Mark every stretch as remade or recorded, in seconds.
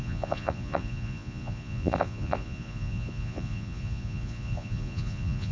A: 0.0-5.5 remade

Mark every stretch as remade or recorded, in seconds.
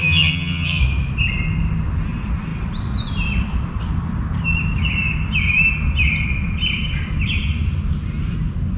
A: 0.0-0.8 remade; 0.8-8.8 recorded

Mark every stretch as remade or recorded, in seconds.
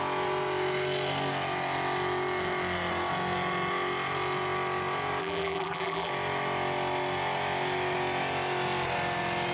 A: 0.0-5.2 recorded; 5.2-6.1 remade; 6.1-9.5 recorded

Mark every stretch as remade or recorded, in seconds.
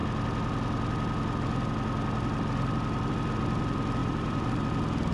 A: 0.0-4.0 recorded; 4.0-4.5 remade; 4.5-5.1 recorded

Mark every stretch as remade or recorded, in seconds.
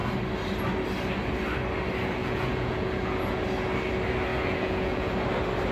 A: 0.0-2.2 recorded; 2.2-3.4 remade; 3.4-4.3 recorded; 4.3-5.1 remade; 5.1-5.7 recorded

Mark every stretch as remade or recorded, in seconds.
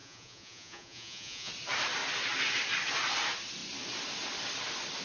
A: 0.0-1.5 remade; 1.5-5.0 recorded